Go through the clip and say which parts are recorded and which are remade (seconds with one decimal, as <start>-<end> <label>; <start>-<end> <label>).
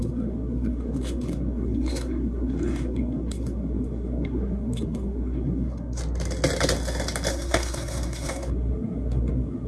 0.0-6.0 remade; 6.0-7.3 recorded; 7.3-9.7 remade